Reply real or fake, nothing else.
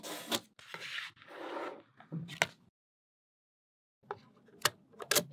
real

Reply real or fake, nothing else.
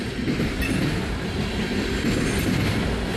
real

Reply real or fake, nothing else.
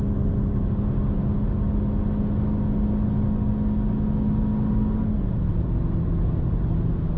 real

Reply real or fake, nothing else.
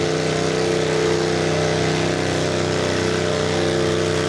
real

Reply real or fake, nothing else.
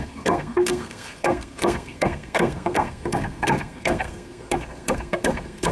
fake